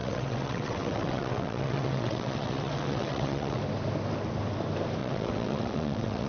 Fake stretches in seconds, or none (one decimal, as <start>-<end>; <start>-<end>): 0.0-3.6; 5.0-6.3